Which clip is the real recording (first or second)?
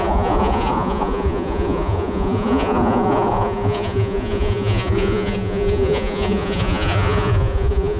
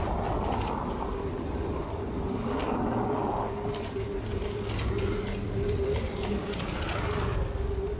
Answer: second